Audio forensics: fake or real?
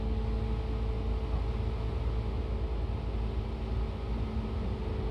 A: real